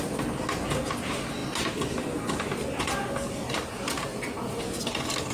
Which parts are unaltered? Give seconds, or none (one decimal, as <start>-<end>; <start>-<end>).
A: 0.0-5.3